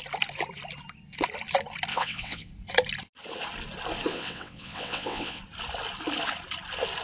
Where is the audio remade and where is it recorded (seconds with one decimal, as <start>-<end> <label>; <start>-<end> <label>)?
0.0-1.9 recorded; 1.9-2.5 remade; 2.5-4.1 recorded; 4.1-5.4 remade; 5.4-7.0 recorded